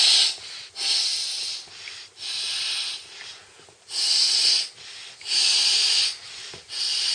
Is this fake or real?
real